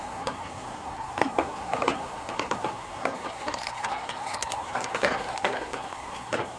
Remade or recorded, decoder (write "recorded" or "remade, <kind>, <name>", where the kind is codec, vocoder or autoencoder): remade, codec, SNAC